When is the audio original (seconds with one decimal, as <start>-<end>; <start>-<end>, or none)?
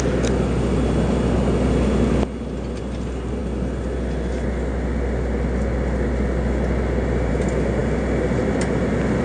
0.0-9.2